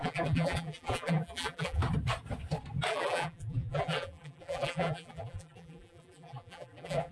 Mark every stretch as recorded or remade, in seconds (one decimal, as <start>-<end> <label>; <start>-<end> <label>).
0.0-1.8 remade; 1.8-2.9 recorded; 2.9-7.1 remade